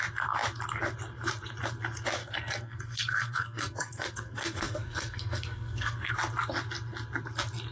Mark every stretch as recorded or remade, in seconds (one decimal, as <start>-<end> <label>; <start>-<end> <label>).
0.0-2.2 recorded; 2.2-6.1 remade; 6.1-7.7 recorded